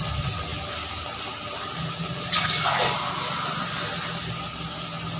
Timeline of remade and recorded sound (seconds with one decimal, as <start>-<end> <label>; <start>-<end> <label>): 0.0-5.2 recorded